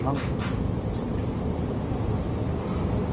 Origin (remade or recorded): recorded